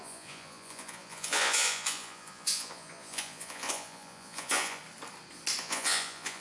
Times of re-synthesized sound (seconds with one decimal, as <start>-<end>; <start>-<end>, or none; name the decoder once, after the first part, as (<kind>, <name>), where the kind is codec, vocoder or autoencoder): 0.0-4.8 (vocoder, Vocos); 5.6-6.4